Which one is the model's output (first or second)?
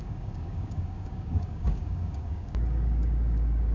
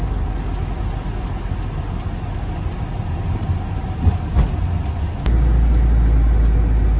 first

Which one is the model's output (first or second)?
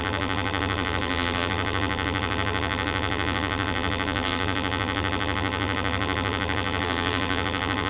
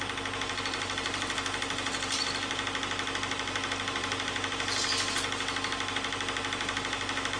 first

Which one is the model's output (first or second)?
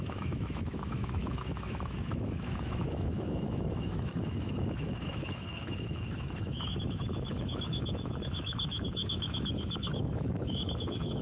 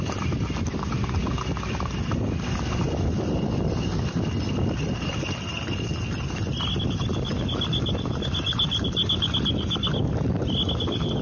first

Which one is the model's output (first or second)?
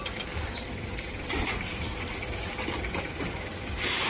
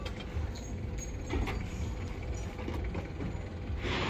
first